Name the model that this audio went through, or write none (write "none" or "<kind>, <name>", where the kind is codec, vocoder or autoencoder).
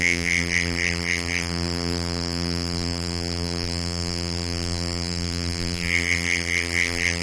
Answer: vocoder, BigVGAN v2